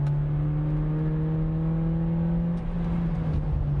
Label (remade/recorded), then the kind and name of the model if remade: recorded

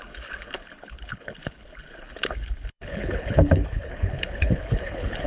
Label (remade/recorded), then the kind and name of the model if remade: remade, codec, HILCodec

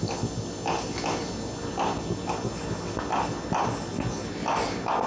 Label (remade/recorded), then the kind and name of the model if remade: recorded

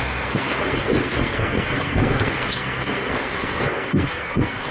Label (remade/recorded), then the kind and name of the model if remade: remade, codec, SNAC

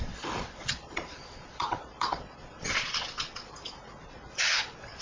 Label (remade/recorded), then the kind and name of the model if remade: remade, vocoder, Vocos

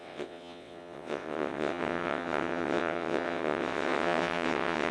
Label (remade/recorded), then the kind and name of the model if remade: remade, vocoder, WaveNeXt